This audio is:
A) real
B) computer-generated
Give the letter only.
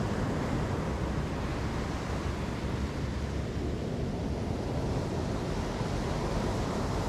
A